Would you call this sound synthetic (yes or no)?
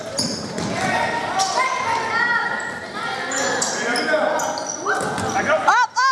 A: no